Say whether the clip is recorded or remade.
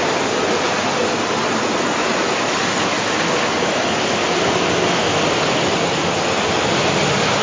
recorded